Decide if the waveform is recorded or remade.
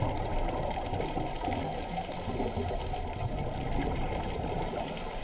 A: recorded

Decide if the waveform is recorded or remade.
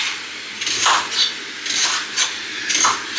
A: remade